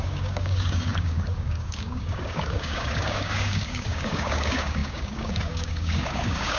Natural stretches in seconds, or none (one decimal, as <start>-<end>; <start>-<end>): none